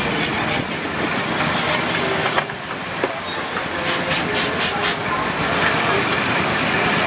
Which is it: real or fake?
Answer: real